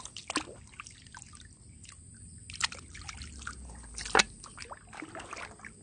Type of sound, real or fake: real